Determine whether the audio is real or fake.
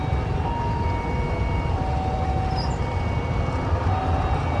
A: real